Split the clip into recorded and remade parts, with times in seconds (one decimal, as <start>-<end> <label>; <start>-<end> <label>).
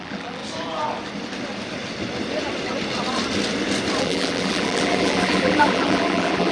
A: 0.0-0.4 remade; 0.4-4.0 recorded; 4.0-6.5 remade